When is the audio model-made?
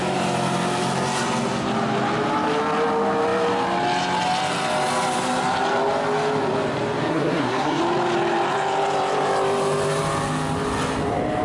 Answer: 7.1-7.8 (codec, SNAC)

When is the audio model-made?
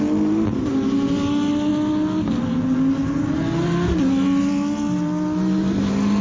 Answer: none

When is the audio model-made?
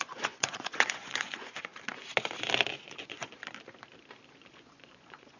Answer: 0.0-1.7 (vocoder, Vocos); 2.7-3.3; 4.5-5.4